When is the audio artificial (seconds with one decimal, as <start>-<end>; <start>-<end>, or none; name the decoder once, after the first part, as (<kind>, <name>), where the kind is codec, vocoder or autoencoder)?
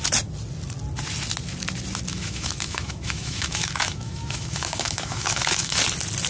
2.1-5.8 (autoencoder, DAC-VAE)